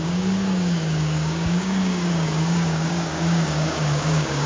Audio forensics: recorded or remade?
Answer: remade